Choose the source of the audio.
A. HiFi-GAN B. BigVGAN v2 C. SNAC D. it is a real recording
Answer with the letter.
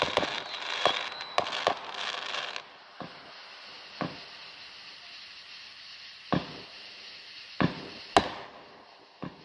D